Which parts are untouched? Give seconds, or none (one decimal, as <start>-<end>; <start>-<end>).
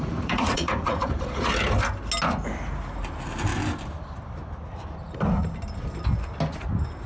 1.5-7.1